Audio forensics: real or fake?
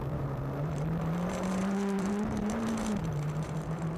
fake